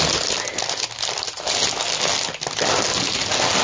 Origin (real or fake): real